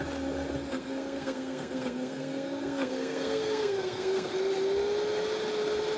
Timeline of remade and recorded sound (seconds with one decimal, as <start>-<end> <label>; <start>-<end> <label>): 0.0-0.7 recorded; 0.7-4.3 remade; 4.3-6.0 recorded